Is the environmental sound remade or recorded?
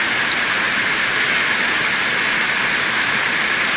recorded